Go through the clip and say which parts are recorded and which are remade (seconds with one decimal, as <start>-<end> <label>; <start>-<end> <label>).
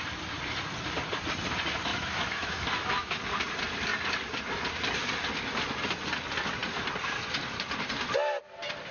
0.0-1.9 recorded; 1.9-3.2 remade; 3.2-8.9 recorded